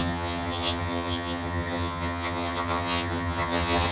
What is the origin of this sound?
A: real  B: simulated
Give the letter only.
B